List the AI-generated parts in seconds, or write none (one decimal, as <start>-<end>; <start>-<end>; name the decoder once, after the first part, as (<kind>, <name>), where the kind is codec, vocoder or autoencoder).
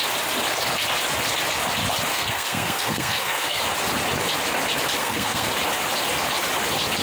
2.1-3.6 (codec, SNAC); 5.0-5.5